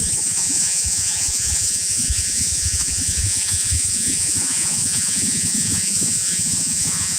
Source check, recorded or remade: remade